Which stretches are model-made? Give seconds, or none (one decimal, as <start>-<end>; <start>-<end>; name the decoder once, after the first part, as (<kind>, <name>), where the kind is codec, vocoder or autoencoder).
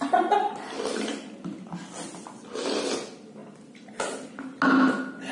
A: none